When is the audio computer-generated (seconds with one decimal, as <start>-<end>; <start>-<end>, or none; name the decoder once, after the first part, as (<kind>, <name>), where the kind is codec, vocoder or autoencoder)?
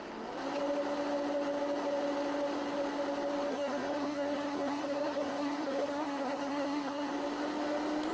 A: 3.5-7.1 (codec, SNAC)